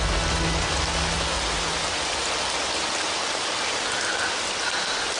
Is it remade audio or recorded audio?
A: recorded